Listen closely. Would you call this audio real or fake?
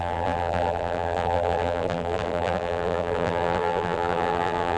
fake